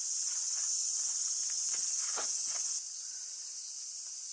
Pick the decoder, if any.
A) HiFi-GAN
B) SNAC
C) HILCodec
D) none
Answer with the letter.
D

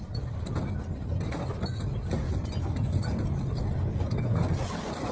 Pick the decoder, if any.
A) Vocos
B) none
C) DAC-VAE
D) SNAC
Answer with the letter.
B